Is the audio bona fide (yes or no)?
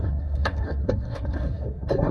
no